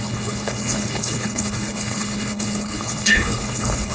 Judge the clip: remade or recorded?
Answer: remade